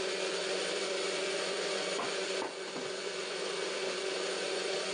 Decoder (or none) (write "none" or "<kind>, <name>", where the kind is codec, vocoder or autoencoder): vocoder, Vocos